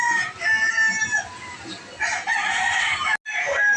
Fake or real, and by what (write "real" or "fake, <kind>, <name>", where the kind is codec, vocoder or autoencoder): real